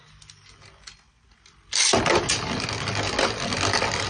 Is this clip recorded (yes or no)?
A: yes